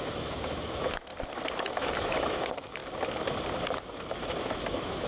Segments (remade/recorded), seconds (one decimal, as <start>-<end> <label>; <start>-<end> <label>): 0.0-1.1 remade; 1.1-1.6 recorded; 1.6-2.8 remade; 2.8-4.2 recorded; 4.2-5.1 remade